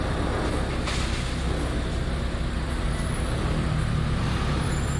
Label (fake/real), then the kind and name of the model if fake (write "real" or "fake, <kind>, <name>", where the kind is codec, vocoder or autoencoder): real